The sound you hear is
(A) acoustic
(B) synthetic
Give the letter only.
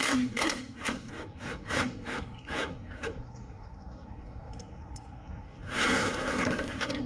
B